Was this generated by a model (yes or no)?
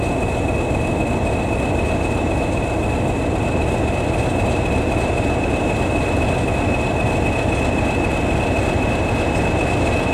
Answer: no